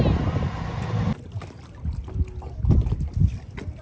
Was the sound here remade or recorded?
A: recorded